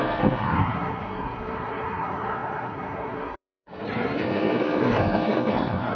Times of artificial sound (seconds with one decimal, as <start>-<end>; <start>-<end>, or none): 0.0-6.0